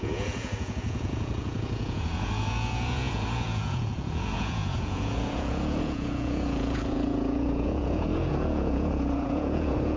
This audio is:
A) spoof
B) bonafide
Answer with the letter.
A